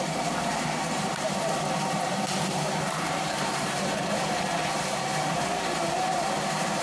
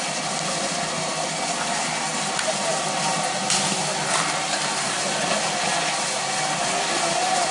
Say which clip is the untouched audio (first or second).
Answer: second